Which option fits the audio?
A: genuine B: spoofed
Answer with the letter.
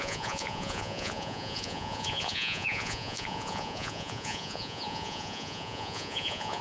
B